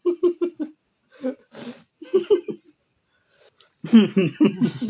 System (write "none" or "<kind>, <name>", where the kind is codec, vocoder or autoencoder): none